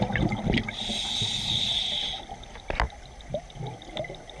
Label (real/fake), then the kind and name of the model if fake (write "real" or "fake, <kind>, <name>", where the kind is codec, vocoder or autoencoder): real